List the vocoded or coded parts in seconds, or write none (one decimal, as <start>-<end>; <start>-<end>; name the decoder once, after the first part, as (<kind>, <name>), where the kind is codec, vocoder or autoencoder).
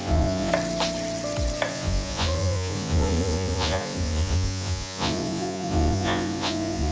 0.0-0.5 (vocoder, Vocos); 1.7-6.9